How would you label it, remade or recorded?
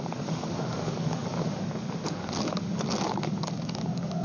remade